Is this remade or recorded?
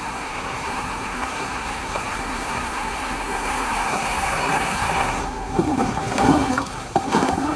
remade